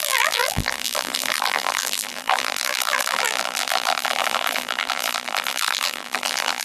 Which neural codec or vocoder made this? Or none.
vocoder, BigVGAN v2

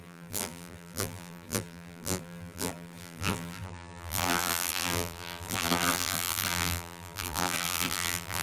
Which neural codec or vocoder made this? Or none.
vocoder, BigVGAN v2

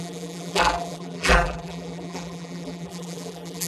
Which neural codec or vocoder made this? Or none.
vocoder, BigVGAN v2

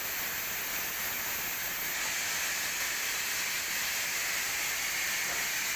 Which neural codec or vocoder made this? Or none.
none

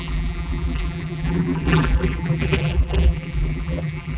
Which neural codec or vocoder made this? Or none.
vocoder, BigVGAN v2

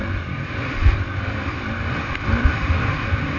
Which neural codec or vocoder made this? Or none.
vocoder, BigVGAN v2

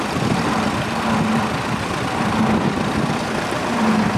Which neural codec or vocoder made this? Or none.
vocoder, BigVGAN v2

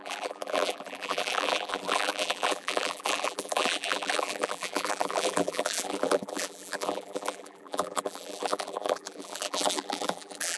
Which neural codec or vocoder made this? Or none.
vocoder, BigVGAN v2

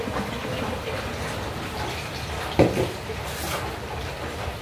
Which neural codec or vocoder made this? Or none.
none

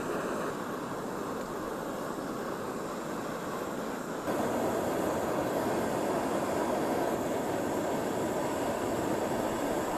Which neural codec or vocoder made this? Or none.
none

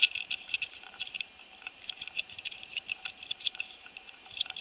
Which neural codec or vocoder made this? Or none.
vocoder, BigVGAN v2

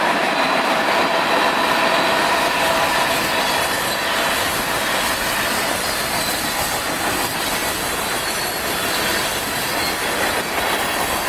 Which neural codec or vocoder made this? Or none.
none